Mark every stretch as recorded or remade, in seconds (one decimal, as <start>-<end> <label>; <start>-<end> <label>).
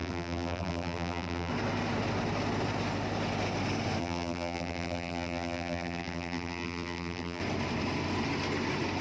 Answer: 0.0-1.5 remade; 1.5-4.0 recorded; 4.0-7.4 remade; 7.4-9.0 recorded